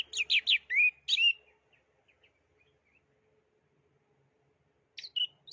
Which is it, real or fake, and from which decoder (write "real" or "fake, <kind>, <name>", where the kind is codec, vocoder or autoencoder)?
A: real